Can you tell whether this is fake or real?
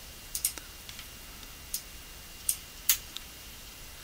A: fake